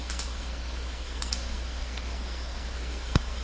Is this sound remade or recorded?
remade